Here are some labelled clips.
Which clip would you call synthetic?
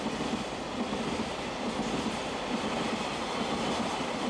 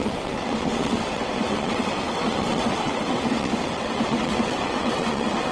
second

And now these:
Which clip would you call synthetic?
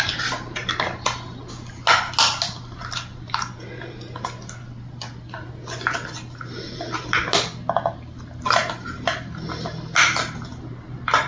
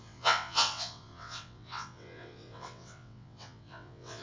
second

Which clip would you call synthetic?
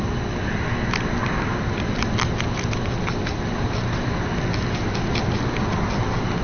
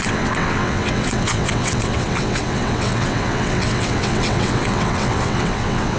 second